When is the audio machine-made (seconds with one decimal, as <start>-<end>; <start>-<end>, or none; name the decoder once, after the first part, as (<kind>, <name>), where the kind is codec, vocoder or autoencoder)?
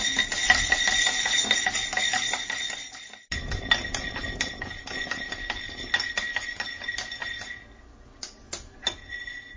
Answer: none